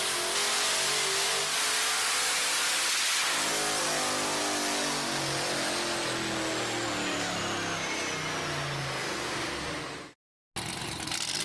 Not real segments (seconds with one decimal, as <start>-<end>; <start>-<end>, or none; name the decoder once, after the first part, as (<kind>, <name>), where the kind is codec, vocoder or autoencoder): none